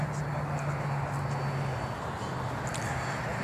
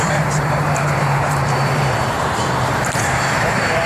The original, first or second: first